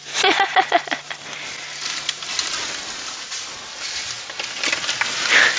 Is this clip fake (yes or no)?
no